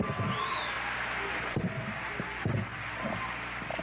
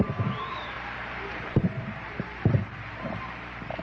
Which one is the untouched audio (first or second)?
first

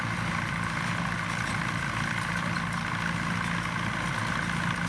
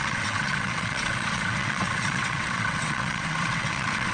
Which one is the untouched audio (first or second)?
first